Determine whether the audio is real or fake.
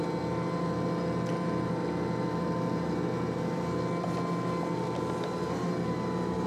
real